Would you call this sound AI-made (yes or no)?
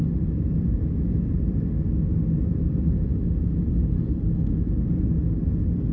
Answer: no